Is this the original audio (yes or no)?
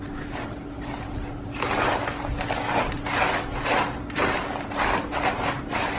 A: yes